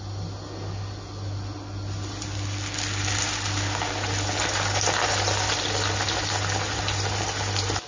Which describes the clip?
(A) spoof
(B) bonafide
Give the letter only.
B